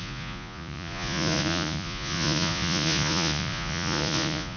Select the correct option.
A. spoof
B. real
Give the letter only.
A